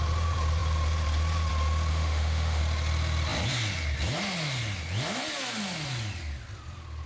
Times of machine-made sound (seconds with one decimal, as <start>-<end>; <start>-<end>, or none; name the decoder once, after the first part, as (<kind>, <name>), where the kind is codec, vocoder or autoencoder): 1.9-2.6 (autoencoder, DAC-VAE)